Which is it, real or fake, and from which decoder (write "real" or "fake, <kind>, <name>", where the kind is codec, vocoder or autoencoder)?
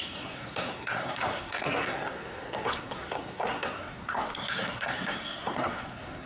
fake, codec, SNAC